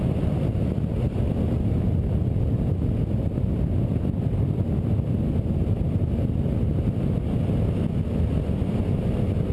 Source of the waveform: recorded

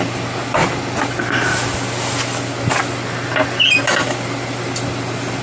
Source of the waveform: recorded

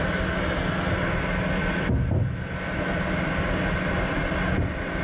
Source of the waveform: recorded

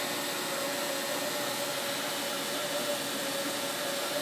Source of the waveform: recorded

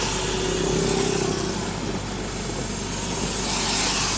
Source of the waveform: recorded